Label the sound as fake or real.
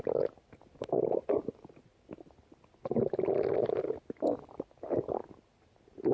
real